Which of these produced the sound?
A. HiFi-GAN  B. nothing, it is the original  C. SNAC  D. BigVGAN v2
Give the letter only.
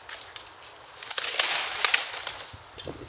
B